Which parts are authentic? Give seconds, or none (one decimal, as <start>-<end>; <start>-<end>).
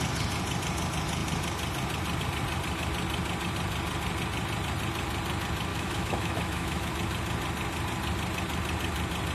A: 0.0-5.7; 6.9-9.3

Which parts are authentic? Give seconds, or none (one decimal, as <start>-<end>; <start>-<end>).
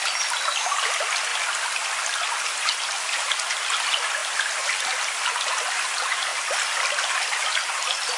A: 0.0-8.2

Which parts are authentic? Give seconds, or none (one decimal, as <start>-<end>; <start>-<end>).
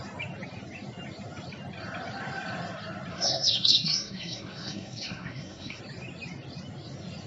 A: 0.0-3.1; 5.8-7.3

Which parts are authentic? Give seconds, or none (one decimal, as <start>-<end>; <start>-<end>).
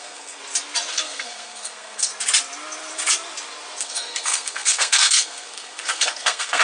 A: 0.4-0.9; 2.1-3.8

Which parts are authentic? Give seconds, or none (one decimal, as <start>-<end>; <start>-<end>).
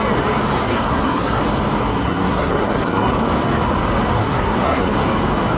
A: 0.0-0.7; 1.4-1.9; 3.1-4.2; 4.9-5.6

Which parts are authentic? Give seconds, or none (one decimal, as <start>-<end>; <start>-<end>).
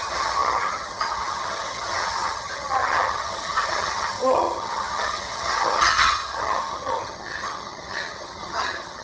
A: none